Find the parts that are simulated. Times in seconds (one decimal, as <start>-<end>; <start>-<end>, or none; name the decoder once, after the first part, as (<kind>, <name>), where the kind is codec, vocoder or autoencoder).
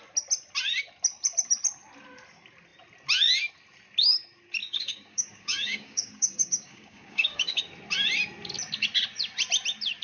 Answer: 4.6-7.6 (codec, DAC)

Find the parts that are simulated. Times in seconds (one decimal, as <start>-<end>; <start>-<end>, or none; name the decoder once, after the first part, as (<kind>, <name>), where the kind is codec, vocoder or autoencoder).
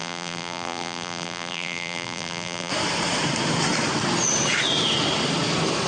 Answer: 0.0-2.7 (vocoder, BigVGAN v2)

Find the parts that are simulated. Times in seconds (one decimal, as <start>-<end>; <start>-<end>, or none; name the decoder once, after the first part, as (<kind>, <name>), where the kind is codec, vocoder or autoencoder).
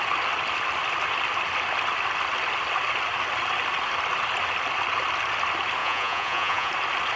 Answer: 5.8-6.7 (vocoder, Vocos)